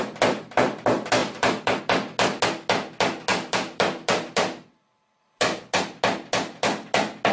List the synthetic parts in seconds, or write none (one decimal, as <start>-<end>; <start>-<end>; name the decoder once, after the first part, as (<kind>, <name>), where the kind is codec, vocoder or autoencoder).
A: 1.2-1.8 (vocoder, BigVGAN v2); 3.3-6.0